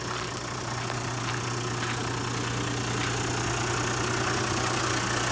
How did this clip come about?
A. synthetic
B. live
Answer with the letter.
B